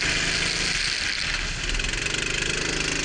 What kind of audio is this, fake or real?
real